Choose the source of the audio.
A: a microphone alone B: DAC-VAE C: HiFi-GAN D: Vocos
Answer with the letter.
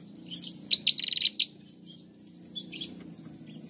A